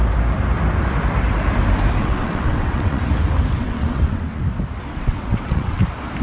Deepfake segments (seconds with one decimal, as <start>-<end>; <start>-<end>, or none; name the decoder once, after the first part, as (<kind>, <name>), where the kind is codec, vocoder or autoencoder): 2.0-3.0 (vocoder, WaveNeXt); 3.6-4.4; 4.9-5.8